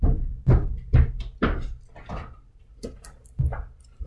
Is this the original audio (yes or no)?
no